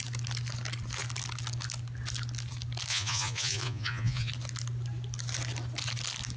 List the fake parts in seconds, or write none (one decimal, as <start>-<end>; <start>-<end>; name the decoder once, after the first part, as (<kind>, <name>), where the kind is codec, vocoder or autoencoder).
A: 2.9-4.3 (vocoder, Vocos)